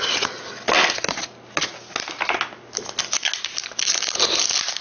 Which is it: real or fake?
real